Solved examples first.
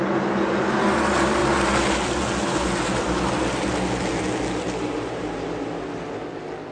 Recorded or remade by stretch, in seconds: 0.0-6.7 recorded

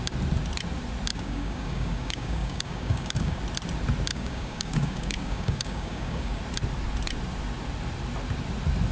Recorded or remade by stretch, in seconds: 0.0-1.1 recorded; 1.1-3.4 remade; 3.4-4.1 recorded; 4.1-6.4 remade; 6.4-8.9 recorded

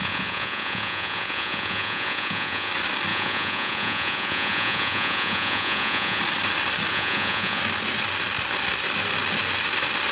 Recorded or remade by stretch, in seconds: 0.0-2.7 remade; 2.7-3.1 recorded; 3.1-6.2 remade; 6.2-6.9 recorded; 6.9-7.6 remade; 7.6-10.1 recorded

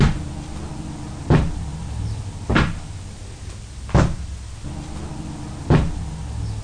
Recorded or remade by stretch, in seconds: 0.0-1.7 recorded; 1.7-3.5 remade; 3.5-6.6 recorded